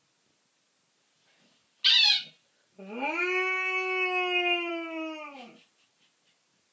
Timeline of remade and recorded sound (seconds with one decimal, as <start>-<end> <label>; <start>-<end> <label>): 0.0-6.7 recorded